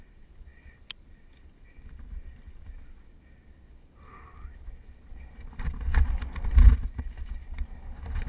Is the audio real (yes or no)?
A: yes